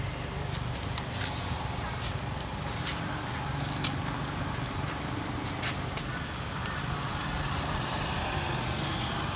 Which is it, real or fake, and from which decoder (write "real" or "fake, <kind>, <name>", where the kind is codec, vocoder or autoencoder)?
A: real